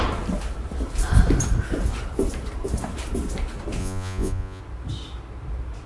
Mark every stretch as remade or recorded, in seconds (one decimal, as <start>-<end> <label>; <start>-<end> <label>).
0.0-3.8 recorded; 3.8-4.6 remade; 4.6-5.9 recorded